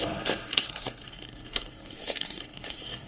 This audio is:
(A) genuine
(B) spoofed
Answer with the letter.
B